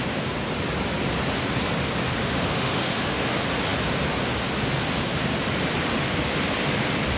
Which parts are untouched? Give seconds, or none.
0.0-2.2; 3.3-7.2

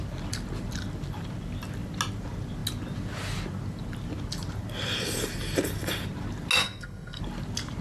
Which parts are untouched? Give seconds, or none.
0.0-6.6; 7.2-7.8

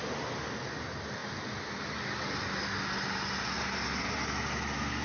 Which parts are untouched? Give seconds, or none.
0.0-5.0

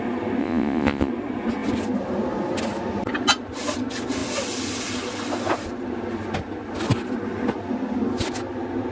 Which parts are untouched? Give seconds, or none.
0.0-0.4; 1.1-8.9